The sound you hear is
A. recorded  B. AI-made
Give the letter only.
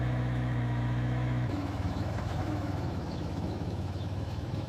B